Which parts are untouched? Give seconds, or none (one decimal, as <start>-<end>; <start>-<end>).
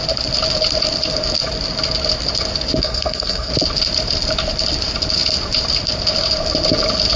0.0-2.8; 3.5-7.2